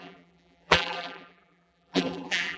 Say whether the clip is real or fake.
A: fake